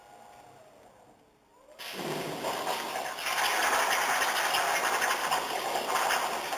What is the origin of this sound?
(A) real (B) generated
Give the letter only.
A